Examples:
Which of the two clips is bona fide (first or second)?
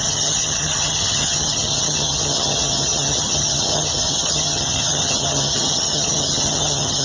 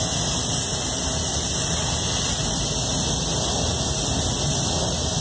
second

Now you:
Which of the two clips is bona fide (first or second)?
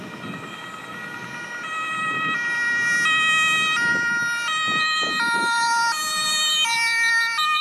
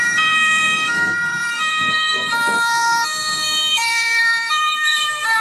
first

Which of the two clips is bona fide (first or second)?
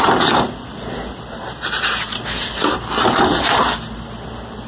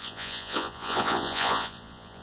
first